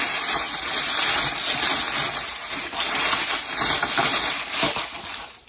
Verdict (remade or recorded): recorded